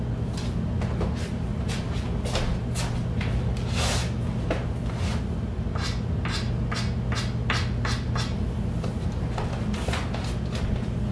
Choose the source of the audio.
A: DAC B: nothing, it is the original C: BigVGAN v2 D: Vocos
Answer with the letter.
B